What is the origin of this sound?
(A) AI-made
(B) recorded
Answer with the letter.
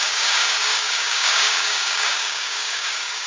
A